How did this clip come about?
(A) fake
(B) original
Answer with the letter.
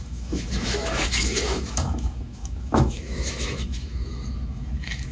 A